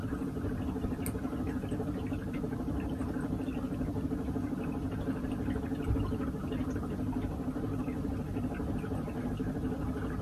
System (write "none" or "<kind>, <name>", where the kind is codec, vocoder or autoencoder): none